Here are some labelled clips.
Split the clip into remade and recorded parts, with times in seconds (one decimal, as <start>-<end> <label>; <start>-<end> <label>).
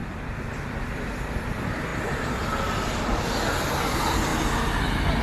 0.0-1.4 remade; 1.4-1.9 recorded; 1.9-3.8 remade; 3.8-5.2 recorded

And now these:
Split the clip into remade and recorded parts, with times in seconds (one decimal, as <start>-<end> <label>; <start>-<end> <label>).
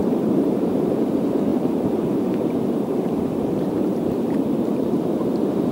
0.0-5.7 remade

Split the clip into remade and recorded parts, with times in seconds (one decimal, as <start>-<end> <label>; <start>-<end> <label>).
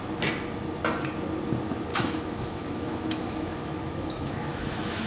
0.0-1.9 recorded; 1.9-5.1 remade